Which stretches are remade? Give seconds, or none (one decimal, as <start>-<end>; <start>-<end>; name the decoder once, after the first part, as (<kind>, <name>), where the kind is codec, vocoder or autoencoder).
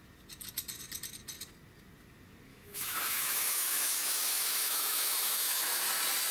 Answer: 2.5-5.8 (autoencoder, DAC-VAE)